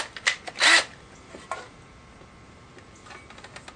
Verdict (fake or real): real